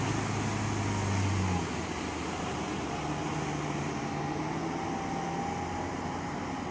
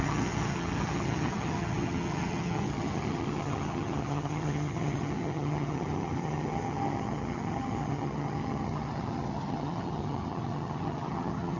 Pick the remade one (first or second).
second